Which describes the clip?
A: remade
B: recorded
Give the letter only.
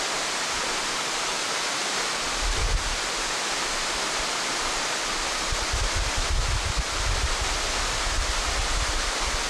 B